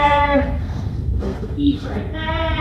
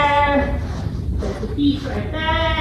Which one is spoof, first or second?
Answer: first